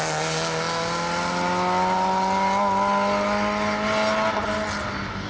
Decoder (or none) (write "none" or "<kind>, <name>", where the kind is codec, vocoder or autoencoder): none